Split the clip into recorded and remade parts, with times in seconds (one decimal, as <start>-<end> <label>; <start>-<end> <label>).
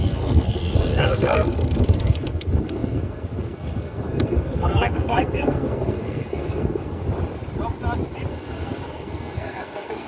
0.0-7.0 remade; 7.0-8.3 recorded; 8.3-10.1 remade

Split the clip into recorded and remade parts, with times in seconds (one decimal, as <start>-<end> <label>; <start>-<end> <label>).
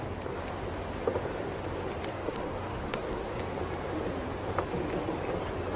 0.0-2.1 recorded; 2.1-3.4 remade; 3.4-5.8 recorded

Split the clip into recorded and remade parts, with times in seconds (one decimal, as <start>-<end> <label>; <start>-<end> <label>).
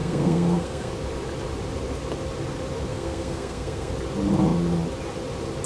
0.0-0.9 remade; 0.9-2.9 recorded; 2.9-3.9 remade; 3.9-5.7 recorded